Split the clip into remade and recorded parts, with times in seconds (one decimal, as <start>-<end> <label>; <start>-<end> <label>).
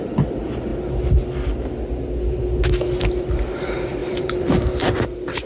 0.0-0.7 remade; 0.7-3.2 recorded; 3.2-5.5 remade